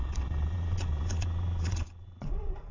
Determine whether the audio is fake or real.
fake